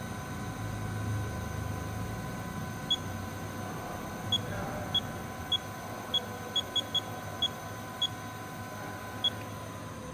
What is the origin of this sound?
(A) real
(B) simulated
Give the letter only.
A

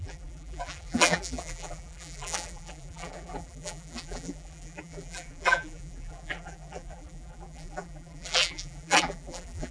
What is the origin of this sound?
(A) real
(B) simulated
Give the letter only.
B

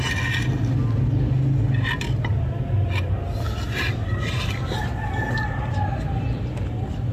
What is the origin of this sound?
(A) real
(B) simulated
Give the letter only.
A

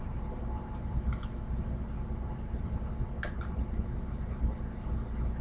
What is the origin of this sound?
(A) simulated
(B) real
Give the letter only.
B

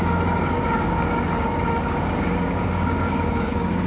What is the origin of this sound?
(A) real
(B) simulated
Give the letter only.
B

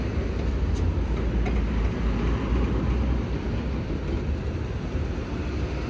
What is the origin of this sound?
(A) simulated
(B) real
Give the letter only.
B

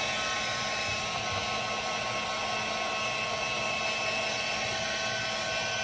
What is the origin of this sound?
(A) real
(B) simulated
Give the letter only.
A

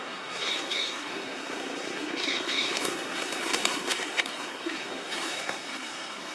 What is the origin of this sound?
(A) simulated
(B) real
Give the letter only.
A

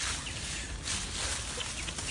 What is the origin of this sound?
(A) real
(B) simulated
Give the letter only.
A